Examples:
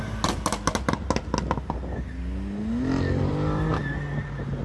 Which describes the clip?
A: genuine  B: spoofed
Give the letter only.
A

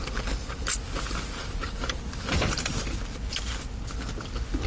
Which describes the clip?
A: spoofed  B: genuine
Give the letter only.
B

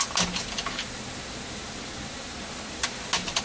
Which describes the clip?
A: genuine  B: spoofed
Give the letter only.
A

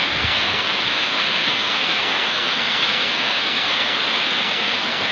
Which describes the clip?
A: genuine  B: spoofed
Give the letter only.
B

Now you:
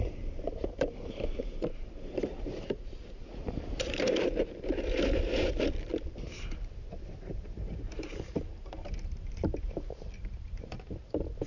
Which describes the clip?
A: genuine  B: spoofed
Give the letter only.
B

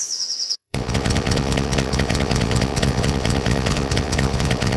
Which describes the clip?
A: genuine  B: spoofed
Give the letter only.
B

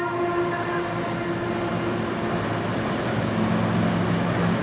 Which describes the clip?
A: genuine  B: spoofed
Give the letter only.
A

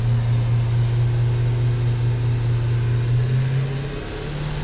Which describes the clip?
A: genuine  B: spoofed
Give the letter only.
A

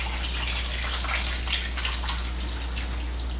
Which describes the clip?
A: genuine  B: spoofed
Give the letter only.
A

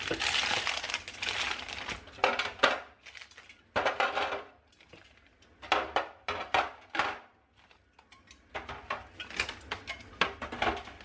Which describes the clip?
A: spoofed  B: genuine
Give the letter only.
B